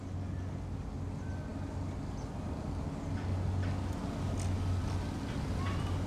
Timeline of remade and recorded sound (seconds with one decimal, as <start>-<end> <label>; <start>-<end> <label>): 0.0-6.1 recorded